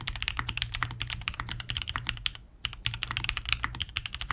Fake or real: fake